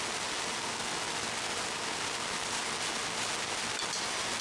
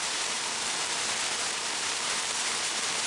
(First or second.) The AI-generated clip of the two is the second